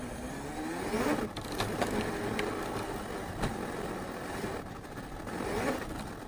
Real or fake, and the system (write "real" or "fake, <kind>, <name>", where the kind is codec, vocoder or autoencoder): real